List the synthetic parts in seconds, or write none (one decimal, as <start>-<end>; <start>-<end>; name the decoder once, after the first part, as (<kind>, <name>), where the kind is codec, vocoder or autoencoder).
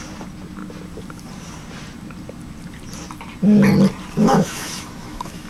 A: 4.2-5.5 (autoencoder, DAC-VAE)